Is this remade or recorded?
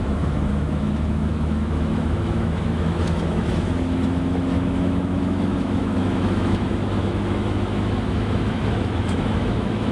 remade